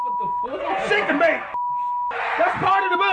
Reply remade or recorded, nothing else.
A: recorded